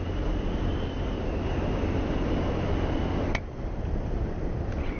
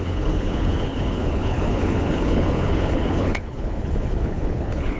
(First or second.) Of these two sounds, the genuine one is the first